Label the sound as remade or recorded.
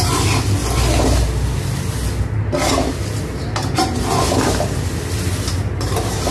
recorded